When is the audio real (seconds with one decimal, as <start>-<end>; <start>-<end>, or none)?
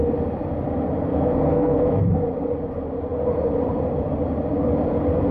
0.0-1.1; 2.1-5.3